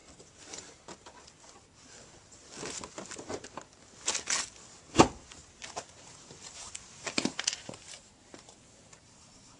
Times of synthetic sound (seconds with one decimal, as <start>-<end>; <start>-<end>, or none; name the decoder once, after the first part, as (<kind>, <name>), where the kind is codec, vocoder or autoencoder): 4.8-9.6 (vocoder, BigVGAN v2)